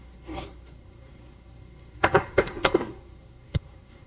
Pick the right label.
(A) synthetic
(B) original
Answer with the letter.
A